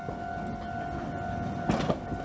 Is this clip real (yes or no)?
yes